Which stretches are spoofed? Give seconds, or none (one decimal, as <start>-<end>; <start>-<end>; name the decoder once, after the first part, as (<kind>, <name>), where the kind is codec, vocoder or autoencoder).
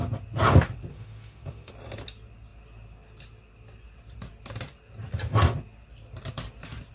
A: 0.9-1.7 (autoencoder, DAC-VAE)